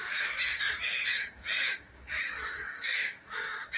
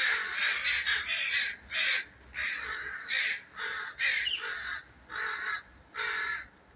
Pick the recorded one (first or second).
second